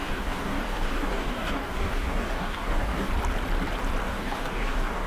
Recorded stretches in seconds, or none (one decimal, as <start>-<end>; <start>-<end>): 3.1-4.0